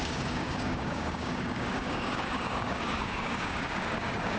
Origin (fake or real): fake